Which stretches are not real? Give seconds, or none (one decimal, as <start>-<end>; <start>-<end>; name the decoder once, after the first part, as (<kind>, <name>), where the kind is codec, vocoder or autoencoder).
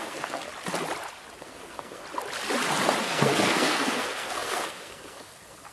0.0-0.5 (codec, SNAC); 1.4-2.0; 3.0-5.7